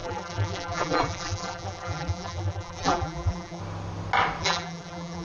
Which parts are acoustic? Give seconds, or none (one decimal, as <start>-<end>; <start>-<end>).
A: 3.6-4.4

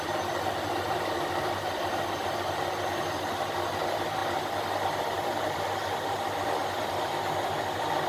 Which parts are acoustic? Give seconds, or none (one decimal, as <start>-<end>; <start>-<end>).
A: 4.2-5.0

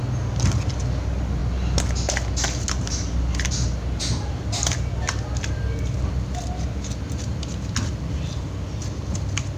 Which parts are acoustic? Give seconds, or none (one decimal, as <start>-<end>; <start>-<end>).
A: 0.0-9.6

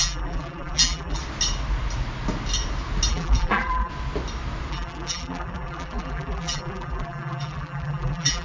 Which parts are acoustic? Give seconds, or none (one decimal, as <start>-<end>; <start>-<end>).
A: 1.2-3.1; 3.9-4.7

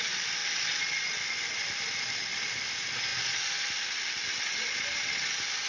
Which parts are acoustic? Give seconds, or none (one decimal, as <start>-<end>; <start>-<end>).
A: 0.4-1.5

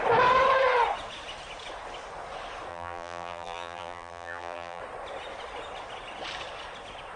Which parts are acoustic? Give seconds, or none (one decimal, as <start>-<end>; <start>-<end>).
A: 0.0-2.7; 4.8-7.2

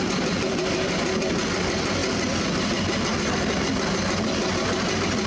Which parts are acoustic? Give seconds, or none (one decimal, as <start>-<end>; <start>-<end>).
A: 2.0-5.3

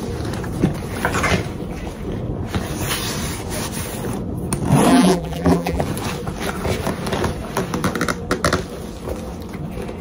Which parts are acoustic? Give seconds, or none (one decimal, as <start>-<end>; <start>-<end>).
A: 0.0-4.9; 5.8-10.0